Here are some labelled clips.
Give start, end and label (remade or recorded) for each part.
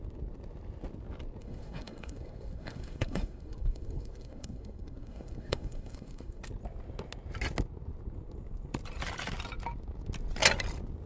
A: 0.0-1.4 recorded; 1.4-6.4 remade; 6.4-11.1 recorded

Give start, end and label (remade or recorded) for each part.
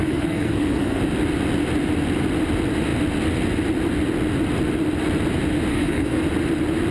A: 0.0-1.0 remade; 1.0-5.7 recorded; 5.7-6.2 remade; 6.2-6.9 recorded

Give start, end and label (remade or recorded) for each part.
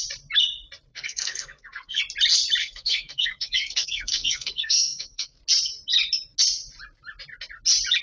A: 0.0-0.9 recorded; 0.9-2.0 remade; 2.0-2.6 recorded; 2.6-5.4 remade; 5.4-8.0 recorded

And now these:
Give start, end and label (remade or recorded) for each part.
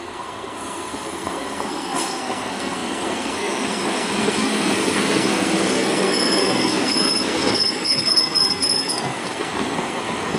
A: 0.0-10.4 remade